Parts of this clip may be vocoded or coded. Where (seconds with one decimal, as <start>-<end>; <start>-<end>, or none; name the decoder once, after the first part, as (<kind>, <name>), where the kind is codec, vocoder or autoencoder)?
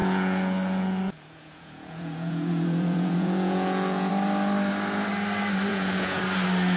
0.0-4.1 (vocoder, Vocos); 5.7-6.2